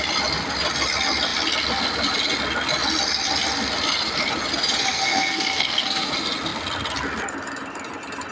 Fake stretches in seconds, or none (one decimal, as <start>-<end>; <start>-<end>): 4.9-6.1